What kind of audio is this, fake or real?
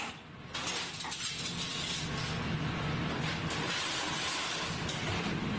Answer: real